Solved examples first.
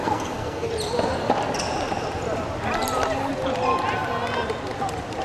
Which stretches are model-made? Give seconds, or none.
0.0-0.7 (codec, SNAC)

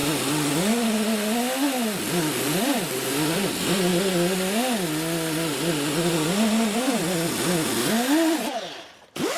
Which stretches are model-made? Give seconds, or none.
none

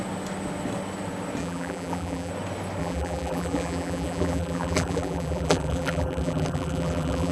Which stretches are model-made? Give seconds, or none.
1.4-2.3 (vocoder, BigVGAN v2); 2.8-7.3

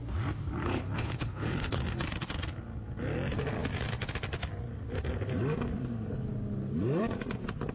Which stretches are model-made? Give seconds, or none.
0.6-1.8 (codec, HILCodec)

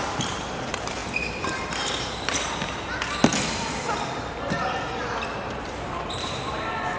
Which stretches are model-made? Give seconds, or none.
0.0-7.0 (vocoder, BigVGAN v2)

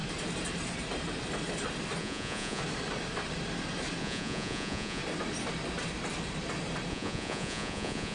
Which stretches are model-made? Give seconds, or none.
2.0-2.6 (vocoder, Vocos); 4.0-5.0; 6.9-8.1

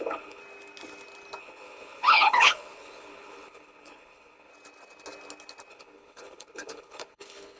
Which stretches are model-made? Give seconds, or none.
0.0-0.4 (codec, HILCodec); 1.4-4.5; 5.7-7.6